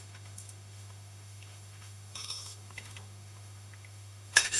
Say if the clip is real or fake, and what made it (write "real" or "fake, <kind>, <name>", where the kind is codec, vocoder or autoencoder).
fake, autoencoder, DAC-VAE